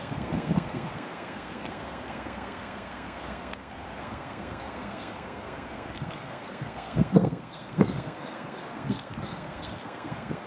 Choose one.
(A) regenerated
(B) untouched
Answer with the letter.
A